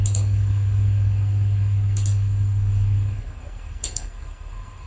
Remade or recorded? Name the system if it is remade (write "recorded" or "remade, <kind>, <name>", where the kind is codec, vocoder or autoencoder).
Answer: remade, codec, SNAC